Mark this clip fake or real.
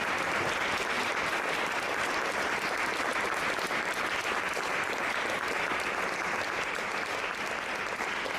real